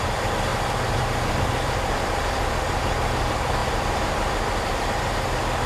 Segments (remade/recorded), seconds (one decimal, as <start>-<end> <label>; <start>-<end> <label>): 0.0-0.5 remade; 0.5-1.3 recorded; 1.3-5.7 remade